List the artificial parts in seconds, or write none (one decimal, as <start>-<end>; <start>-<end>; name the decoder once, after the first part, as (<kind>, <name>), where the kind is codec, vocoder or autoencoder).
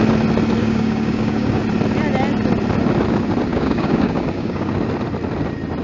0.6-1.6 (codec, DAC); 3.5-4.7